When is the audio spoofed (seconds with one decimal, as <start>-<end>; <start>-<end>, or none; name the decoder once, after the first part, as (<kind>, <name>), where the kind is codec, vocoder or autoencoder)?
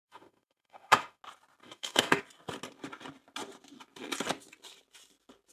0.0-1.2 (autoencoder, DAC-VAE); 1.6-2.2